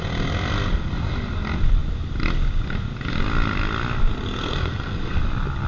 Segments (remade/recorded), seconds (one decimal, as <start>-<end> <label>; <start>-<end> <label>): 0.0-4.4 recorded; 4.4-5.2 remade; 5.2-5.7 recorded